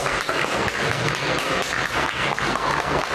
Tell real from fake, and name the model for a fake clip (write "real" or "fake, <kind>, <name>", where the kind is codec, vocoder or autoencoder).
fake, codec, SNAC